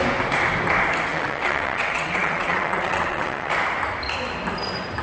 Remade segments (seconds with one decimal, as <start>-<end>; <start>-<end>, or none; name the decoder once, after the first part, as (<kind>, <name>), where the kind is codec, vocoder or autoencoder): 1.1-3.5 (vocoder, WaveNeXt)

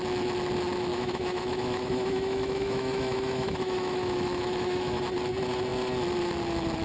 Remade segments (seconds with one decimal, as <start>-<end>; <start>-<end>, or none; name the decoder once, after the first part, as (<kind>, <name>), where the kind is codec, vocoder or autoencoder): 0.9-5.0 (autoencoder, DAC-VAE)

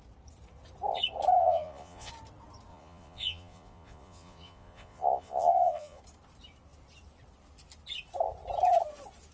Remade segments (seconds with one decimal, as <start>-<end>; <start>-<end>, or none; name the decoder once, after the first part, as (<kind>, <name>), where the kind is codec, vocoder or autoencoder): 1.4-2.1 (vocoder, Vocos); 2.7-6.0